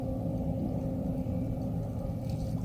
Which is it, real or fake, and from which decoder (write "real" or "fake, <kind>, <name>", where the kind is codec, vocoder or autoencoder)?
real